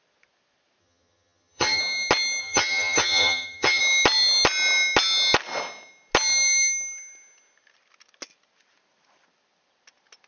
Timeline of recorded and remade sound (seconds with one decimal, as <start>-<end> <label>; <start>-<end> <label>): 0.0-0.8 recorded; 0.8-1.8 remade; 1.8-2.4 recorded; 2.4-3.8 remade; 3.8-10.3 recorded